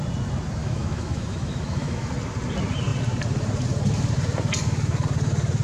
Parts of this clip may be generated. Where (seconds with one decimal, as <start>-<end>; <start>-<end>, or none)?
0.6-2.1